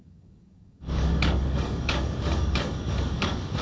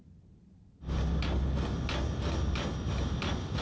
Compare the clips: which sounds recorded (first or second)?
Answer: second